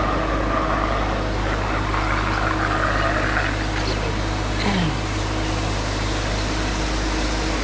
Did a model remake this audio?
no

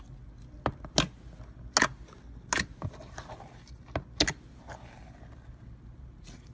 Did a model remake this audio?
no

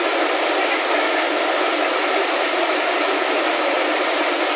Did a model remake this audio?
no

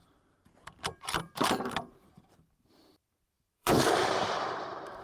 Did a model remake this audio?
yes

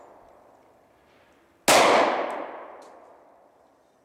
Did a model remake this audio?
no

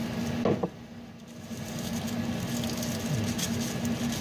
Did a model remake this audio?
no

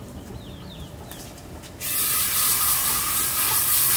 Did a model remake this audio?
no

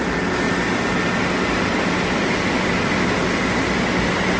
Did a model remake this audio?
no